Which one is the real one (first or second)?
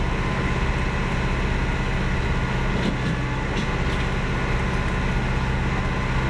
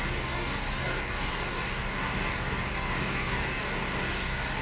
first